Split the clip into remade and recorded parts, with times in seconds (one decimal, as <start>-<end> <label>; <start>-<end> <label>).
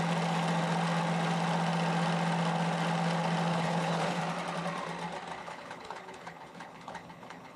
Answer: 0.0-3.5 recorded; 3.5-4.2 remade; 4.2-5.4 recorded; 5.4-7.6 remade